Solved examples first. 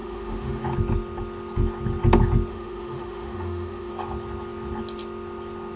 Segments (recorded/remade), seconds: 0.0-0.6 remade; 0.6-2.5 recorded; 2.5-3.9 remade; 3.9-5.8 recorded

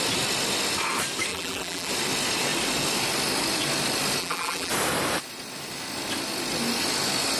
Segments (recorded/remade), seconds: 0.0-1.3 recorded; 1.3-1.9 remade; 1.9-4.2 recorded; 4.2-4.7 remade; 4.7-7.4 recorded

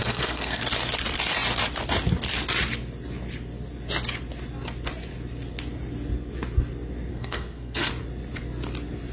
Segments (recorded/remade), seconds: 0.0-0.6 remade; 0.6-7.1 recorded; 7.1-7.9 remade; 7.9-9.1 recorded

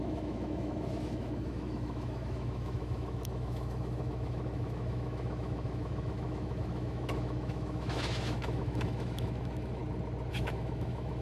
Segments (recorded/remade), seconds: 0.0-9.8 remade; 9.8-10.3 recorded; 10.3-11.2 remade

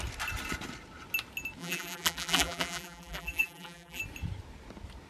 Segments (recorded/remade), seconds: 0.0-1.6 recorded; 1.6-4.0 remade; 4.0-5.1 recorded

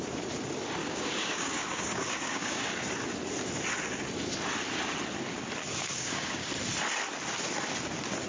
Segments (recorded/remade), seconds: 0.0-0.8 recorded; 0.8-2.7 remade; 2.7-5.6 recorded; 5.6-6.5 remade; 6.5-8.3 recorded

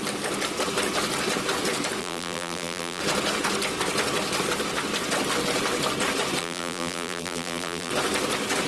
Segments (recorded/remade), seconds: 0.0-2.0 recorded; 2.0-3.0 remade; 3.0-6.4 recorded; 6.4-7.9 remade; 7.9-8.7 recorded

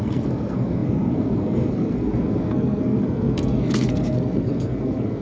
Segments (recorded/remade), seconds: 0.0-5.2 remade